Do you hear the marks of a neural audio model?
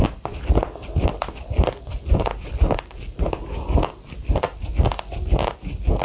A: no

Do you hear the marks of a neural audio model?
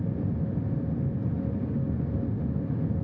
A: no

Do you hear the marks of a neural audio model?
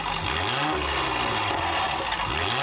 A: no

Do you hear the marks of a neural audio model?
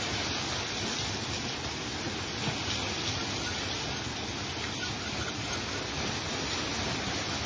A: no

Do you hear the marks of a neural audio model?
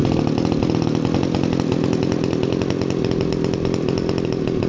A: no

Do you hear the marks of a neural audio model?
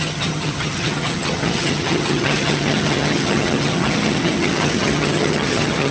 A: yes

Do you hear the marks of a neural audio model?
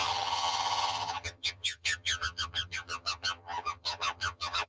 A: yes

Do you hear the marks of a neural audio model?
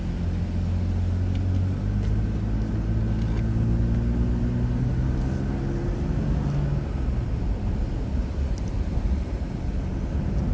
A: no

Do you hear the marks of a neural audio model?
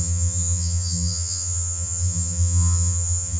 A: yes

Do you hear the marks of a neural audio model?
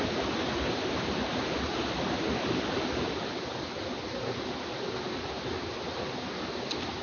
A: no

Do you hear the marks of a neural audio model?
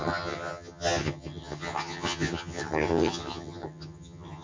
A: yes